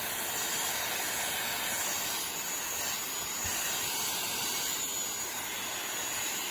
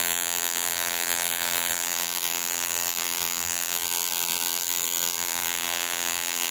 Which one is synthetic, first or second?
second